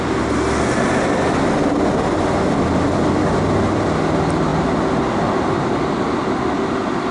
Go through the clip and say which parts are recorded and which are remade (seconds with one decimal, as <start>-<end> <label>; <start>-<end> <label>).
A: 0.0-7.1 recorded